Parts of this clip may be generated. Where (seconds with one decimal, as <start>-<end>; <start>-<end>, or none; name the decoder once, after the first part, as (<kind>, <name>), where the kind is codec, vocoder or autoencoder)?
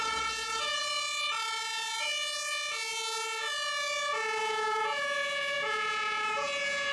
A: 0.0-0.8 (vocoder, Vocos); 4.4-6.9